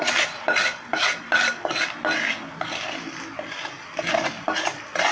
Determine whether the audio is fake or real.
real